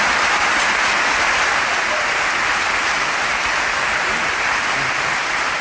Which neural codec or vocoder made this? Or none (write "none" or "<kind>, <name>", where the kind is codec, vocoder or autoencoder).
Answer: none